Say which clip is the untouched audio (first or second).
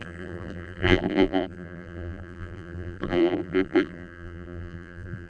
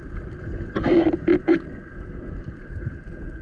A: second